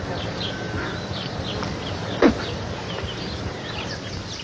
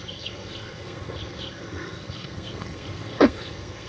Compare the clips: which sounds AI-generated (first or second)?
second